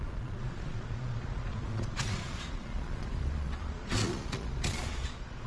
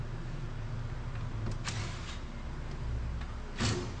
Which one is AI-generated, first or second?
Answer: first